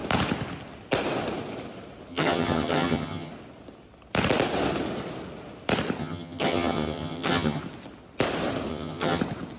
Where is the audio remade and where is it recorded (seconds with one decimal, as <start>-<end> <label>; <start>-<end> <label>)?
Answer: 0.0-2.1 recorded; 2.1-3.3 remade; 3.3-6.0 recorded; 6.0-7.6 remade; 7.6-8.7 recorded; 8.7-9.2 remade; 9.2-9.6 recorded